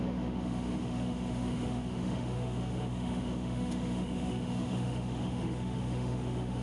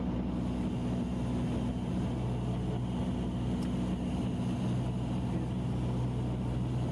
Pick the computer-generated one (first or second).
first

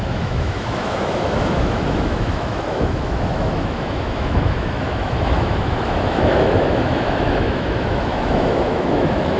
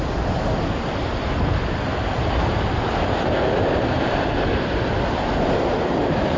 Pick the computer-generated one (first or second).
first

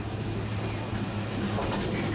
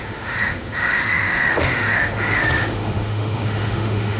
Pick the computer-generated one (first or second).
second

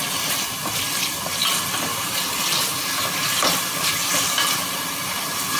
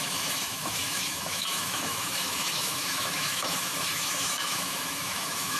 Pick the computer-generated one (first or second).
second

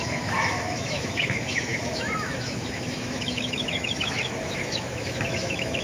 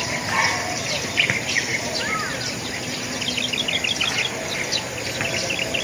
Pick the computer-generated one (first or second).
first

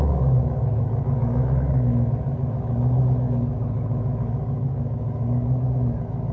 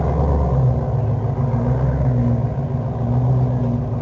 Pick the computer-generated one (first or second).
first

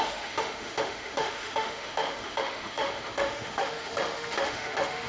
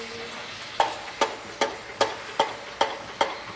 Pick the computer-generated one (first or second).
first